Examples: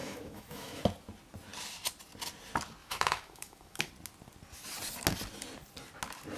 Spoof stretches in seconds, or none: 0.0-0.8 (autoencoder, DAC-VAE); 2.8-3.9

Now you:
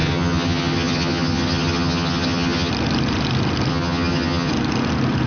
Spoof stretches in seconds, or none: 0.0-2.7 (vocoder, HiFi-GAN); 3.7-4.5

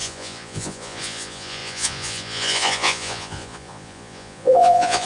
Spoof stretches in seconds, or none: 0.0-5.1 (vocoder, Vocos)

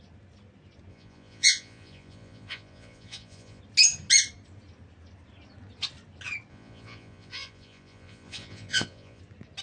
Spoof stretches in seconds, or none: 0.9-3.6 (vocoder, Vocos); 6.5-9.2

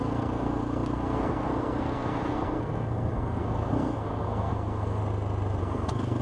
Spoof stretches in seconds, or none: 0.0-5.0 (codec, SNAC); 5.6-6.2

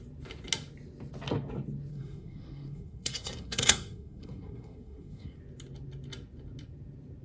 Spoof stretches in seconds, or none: 1.9-5.4 (codec, SNAC)

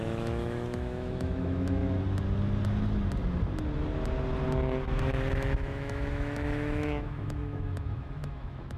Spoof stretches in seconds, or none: 0.0-1.8 (autoencoder, DAC-VAE); 5.3-8.8

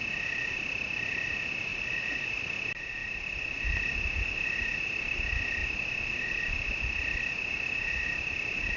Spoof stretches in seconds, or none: 1.7-2.4 (vocoder, Vocos)